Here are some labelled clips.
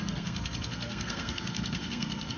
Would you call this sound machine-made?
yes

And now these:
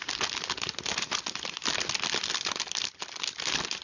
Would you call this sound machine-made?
no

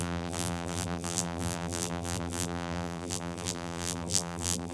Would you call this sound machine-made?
yes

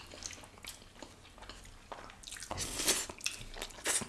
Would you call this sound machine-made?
no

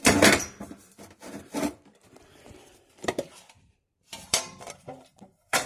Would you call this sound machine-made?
yes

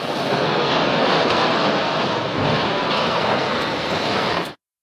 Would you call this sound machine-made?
yes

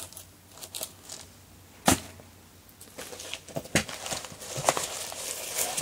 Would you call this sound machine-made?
no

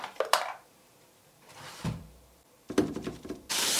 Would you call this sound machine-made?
yes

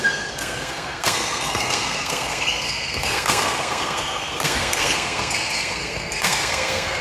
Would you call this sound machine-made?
yes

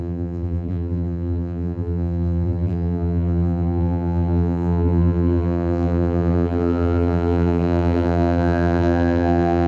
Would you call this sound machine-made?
yes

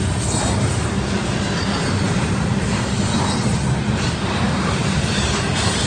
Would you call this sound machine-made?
no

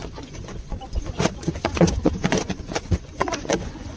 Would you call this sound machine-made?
yes